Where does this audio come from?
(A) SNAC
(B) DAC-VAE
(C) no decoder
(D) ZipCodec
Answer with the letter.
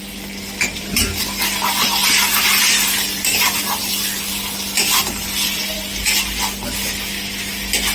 C